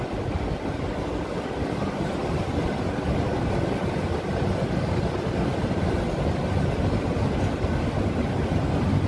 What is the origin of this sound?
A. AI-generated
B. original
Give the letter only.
B